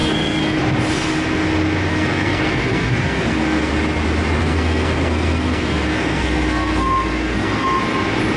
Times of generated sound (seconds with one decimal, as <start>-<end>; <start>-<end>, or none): 0.0-0.6; 1.9-3.7; 4.4-7.8